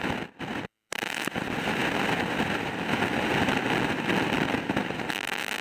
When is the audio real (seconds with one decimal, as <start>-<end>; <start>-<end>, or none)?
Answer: 0.0-5.6